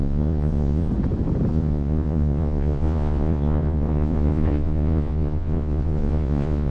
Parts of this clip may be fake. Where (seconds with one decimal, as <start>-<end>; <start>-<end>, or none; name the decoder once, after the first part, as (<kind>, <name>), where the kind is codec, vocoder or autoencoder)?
0.0-0.9 (vocoder, Vocos); 1.5-6.7